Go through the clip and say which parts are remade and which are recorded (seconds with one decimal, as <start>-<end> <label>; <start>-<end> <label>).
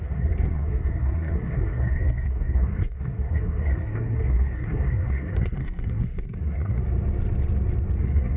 0.0-6.8 remade; 6.8-8.0 recorded; 8.0-8.4 remade